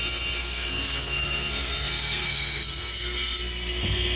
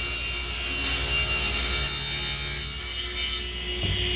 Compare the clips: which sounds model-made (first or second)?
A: first